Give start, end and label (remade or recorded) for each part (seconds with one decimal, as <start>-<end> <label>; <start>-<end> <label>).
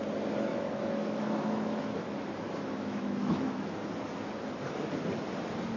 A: 0.0-0.5 recorded; 0.5-3.8 remade; 3.8-5.8 recorded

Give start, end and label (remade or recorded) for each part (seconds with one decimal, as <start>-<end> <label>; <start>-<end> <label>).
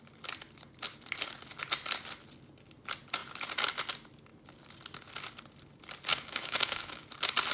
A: 0.0-6.1 recorded; 6.1-7.1 remade; 7.1-7.5 recorded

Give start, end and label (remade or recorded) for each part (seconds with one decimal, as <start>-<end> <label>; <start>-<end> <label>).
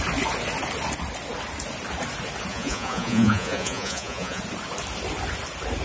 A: 0.0-2.5 recorded; 2.5-4.4 remade; 4.4-5.8 recorded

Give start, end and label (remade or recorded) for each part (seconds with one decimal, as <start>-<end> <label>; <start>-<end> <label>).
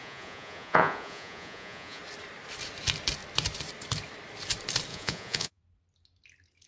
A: 0.0-2.0 remade; 2.0-4.9 recorded; 4.9-5.6 remade; 5.6-6.7 recorded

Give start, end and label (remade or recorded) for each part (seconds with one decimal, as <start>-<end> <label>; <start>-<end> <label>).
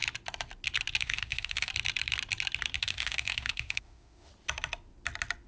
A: 0.0-1.0 recorded; 1.0-1.7 remade; 1.7-2.8 recorded; 2.8-4.3 remade; 4.3-5.5 recorded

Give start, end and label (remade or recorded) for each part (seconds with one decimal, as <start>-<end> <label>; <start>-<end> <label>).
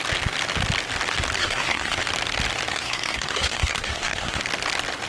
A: 0.0-1.4 recorded; 1.4-2.0 remade; 2.0-2.7 recorded; 2.7-4.4 remade; 4.4-5.1 recorded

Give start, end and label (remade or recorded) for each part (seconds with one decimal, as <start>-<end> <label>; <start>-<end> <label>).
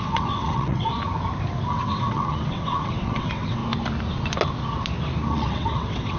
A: 0.0-0.9 remade; 0.9-1.7 recorded; 1.7-3.6 remade; 3.6-5.3 recorded; 5.3-6.2 remade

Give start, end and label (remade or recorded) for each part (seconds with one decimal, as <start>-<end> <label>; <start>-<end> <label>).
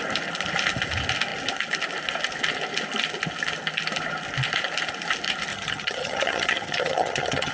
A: 0.0-5.5 recorded; 5.5-7.5 remade